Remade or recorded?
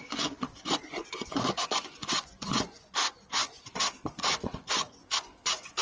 remade